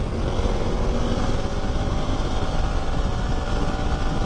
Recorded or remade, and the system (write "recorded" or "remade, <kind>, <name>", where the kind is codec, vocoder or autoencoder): recorded